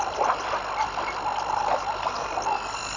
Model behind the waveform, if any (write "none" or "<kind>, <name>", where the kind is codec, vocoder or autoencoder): none